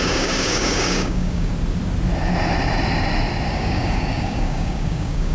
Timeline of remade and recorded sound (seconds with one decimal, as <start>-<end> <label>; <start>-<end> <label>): 0.0-1.5 remade; 1.5-3.5 recorded; 3.5-5.3 remade